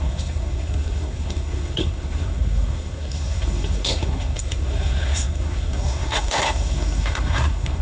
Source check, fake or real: fake